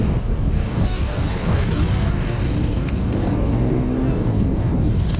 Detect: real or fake fake